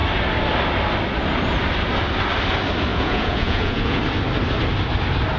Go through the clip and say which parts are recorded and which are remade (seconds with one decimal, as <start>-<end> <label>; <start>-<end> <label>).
0.0-2.9 recorded; 2.9-4.0 remade; 4.0-5.4 recorded